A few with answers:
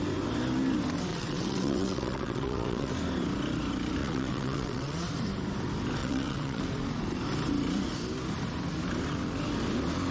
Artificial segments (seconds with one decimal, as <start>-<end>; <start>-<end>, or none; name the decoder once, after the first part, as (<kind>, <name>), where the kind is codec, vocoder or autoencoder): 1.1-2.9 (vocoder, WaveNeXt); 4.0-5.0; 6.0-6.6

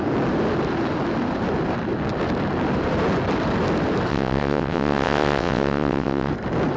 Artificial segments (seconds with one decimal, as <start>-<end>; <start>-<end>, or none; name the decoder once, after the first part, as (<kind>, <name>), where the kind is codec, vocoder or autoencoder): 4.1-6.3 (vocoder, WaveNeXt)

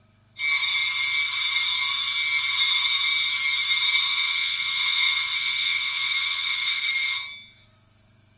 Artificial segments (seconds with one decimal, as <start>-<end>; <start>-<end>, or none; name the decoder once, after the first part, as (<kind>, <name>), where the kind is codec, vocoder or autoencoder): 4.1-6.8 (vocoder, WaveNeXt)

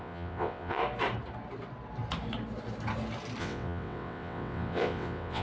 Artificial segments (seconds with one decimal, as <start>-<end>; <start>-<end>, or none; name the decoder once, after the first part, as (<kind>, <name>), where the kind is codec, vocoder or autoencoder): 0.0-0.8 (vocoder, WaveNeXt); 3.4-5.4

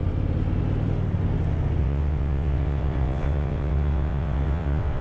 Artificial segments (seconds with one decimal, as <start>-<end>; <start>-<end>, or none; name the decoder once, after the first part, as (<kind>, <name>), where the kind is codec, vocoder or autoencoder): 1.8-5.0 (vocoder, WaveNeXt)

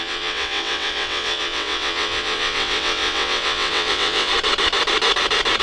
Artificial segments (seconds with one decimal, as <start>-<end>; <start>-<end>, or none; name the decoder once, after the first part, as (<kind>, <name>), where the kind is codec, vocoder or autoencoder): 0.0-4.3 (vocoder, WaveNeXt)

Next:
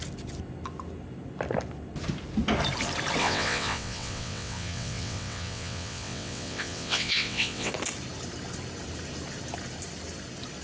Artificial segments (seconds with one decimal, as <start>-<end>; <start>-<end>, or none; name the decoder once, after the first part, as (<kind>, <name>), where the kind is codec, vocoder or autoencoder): 3.2-7.7 (vocoder, WaveNeXt)

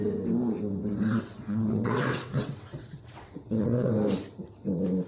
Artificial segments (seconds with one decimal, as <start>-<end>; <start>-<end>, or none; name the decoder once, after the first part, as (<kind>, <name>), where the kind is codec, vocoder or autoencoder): 0.8-3.9 (vocoder, WaveNeXt)